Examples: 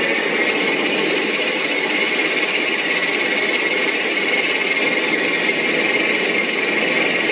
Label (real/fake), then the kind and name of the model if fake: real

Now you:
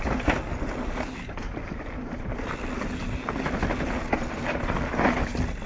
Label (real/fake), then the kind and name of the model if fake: real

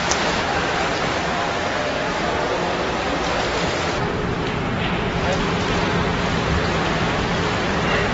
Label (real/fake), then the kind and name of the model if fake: real